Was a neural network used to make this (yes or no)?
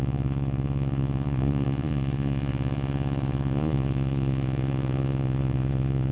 yes